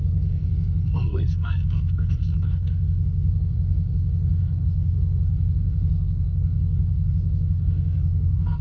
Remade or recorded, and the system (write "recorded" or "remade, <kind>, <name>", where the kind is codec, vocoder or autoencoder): remade, codec, SNAC